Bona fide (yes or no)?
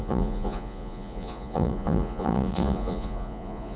no